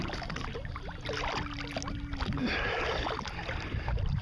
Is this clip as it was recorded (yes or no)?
yes